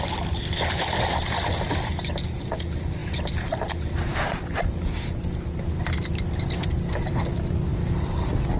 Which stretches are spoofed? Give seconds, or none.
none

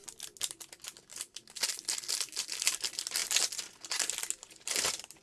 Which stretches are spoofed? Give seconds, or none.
none

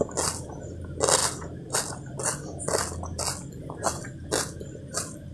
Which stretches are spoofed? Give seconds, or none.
none

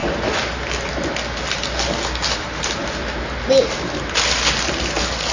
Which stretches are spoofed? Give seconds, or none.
none